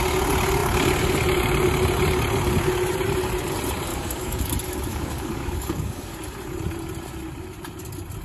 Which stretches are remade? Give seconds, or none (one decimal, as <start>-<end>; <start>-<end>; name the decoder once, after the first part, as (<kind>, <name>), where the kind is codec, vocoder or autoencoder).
3.9-4.5 (codec, DAC); 4.9-6.1